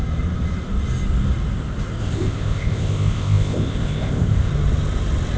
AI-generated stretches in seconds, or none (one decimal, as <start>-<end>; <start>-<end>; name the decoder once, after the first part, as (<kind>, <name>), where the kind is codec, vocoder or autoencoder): 2.0-4.5 (codec, ZipCodec)